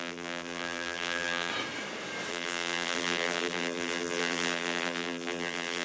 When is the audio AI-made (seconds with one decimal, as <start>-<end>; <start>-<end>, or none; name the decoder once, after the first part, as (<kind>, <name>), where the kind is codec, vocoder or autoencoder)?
0.0-1.5 (vocoder, BigVGAN v2); 2.3-5.8